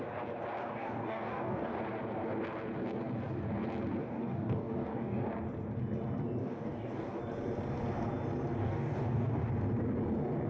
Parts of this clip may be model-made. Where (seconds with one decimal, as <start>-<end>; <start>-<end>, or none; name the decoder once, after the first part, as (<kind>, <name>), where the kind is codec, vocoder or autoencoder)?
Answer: 0.6-1.8 (codec, DAC); 4.0-5.3; 6.4-7.2; 8.6-9.5